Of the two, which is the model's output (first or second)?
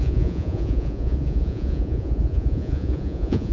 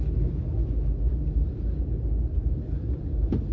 first